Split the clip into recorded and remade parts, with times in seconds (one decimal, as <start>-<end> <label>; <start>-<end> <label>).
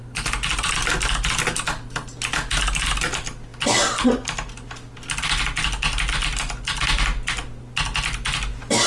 0.0-8.9 recorded